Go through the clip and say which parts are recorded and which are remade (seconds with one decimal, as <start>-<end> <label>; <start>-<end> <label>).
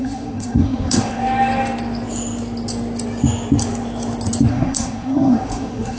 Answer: 0.0-1.2 remade; 1.2-4.5 recorded; 4.5-6.0 remade